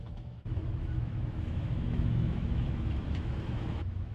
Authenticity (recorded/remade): remade